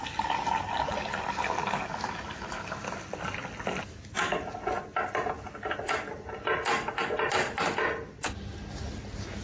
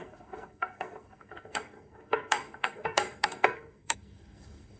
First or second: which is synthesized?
second